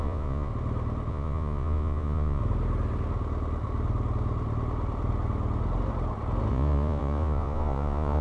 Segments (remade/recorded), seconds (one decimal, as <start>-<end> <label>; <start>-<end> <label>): 0.0-0.5 remade; 0.5-1.1 recorded; 1.1-2.4 remade; 2.4-6.5 recorded; 6.5-8.2 remade